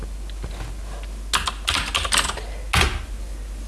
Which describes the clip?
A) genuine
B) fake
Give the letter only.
A